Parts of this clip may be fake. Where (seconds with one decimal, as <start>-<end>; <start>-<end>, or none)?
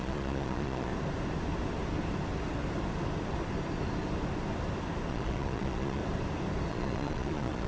0.0-0.9; 5.1-6.0; 6.7-7.7